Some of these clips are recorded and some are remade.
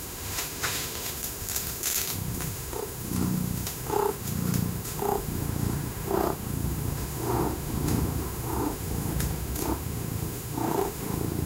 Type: remade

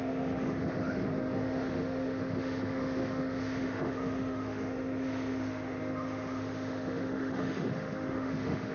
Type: remade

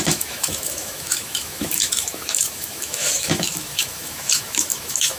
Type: remade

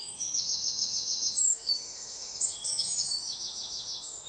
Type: remade